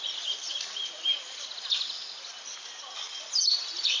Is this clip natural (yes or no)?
yes